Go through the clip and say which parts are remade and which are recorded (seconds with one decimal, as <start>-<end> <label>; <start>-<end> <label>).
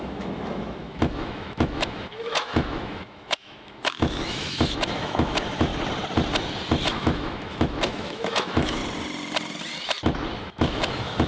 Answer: 0.0-5.7 remade; 5.7-6.8 recorded; 6.8-8.8 remade; 8.8-10.4 recorded; 10.4-11.3 remade